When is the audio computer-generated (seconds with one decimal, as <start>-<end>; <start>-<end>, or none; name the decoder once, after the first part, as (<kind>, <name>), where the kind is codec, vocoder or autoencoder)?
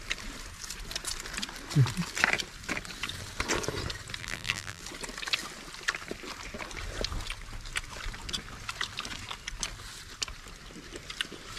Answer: 4.2-4.8 (vocoder, BigVGAN v2)